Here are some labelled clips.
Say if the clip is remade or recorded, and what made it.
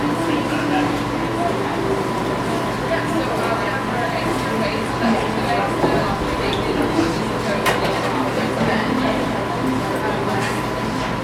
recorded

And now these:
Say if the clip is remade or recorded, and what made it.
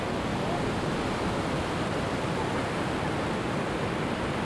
recorded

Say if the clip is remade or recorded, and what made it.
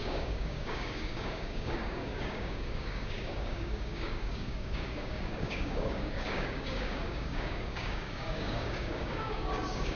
remade, codec, DAC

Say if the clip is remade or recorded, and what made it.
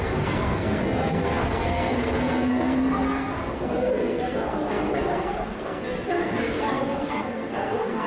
remade, codec, SNAC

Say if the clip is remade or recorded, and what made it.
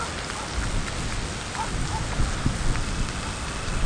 recorded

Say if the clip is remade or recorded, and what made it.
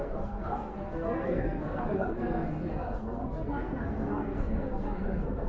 remade, codec, SNAC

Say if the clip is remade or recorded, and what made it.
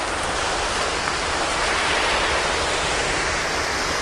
recorded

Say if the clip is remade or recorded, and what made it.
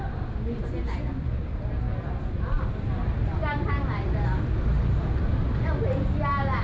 recorded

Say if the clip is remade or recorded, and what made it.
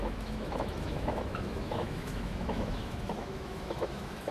remade, autoencoder, DAC-VAE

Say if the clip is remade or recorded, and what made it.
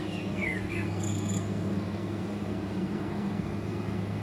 remade, codec, SNAC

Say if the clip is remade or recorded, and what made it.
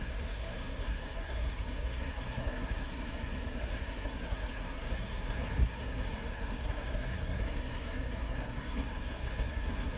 remade, codec, SNAC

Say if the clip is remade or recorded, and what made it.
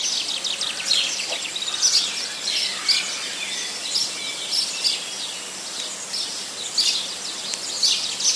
recorded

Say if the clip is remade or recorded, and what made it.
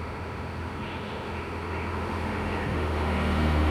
remade, autoencoder, DAC-VAE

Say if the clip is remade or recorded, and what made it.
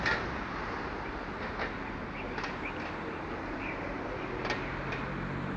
recorded